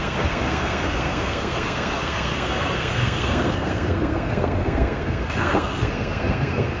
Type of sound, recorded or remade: remade